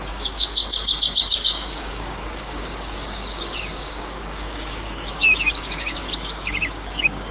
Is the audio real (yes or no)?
no